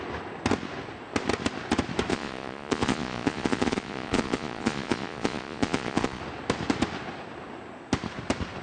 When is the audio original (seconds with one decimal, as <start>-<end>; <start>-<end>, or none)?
0.0-2.1; 6.2-8.6